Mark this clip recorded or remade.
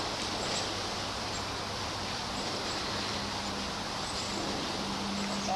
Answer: recorded